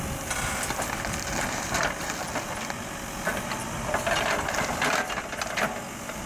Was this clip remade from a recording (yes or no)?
no